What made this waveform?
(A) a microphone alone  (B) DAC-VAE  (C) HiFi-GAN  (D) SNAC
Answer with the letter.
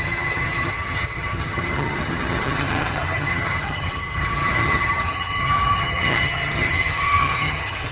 C